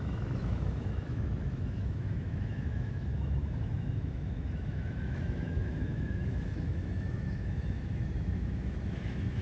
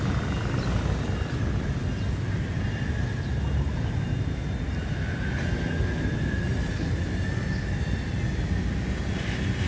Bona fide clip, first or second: second